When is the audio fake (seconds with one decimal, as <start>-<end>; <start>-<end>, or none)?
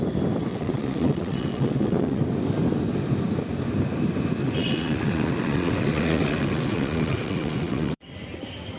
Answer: 0.5-2.2; 4.4-8.1